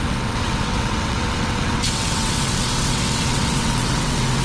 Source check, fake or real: fake